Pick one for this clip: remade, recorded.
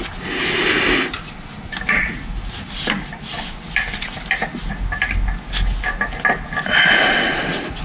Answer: recorded